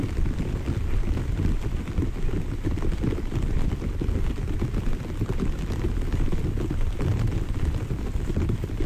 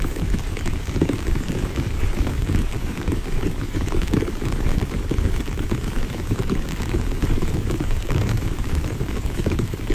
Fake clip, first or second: second